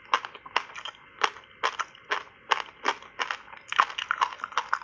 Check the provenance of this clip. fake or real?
real